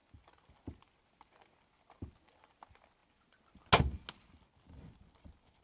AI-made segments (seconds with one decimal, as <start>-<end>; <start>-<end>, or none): none